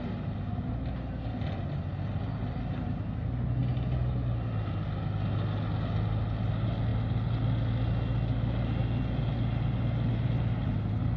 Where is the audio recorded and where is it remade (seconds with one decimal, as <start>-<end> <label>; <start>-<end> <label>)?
0.0-11.2 recorded